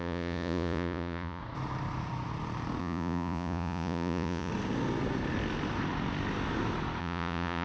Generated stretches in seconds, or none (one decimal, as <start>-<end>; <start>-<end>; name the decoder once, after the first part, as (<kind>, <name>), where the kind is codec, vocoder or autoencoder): 0.0-1.4 (vocoder, Vocos); 2.8-4.5; 7.0-7.6